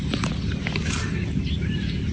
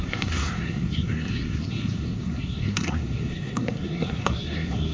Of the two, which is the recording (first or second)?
first